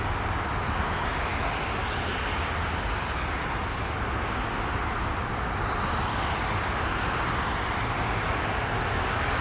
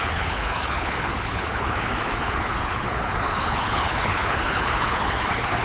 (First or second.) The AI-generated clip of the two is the second